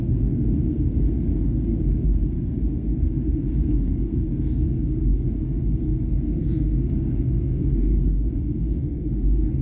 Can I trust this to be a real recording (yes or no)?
no